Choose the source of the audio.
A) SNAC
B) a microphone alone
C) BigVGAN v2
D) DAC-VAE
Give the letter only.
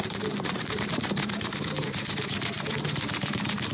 C